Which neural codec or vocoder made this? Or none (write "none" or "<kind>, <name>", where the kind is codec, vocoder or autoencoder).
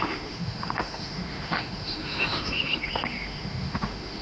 autoencoder, DAC-VAE